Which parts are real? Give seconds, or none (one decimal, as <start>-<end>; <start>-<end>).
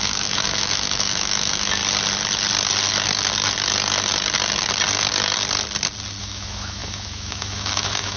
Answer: 1.8-6.2